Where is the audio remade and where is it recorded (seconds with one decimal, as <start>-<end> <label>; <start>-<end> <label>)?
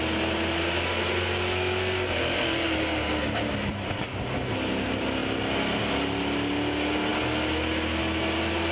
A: 0.0-8.7 recorded